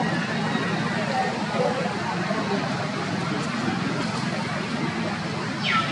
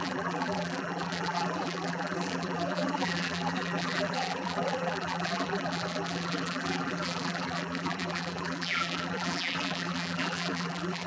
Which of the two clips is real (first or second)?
first